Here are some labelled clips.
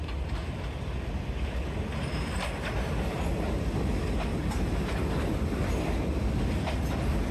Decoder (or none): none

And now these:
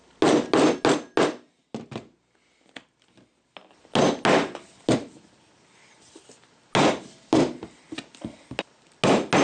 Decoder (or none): none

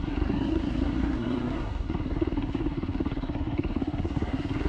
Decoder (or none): codec, SNAC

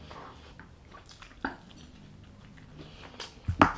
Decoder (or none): none